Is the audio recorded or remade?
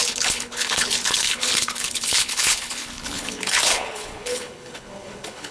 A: remade